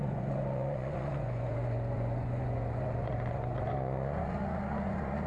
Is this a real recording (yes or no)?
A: no